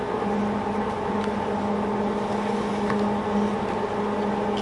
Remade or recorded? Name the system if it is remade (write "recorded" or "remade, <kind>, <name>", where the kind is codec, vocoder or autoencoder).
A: recorded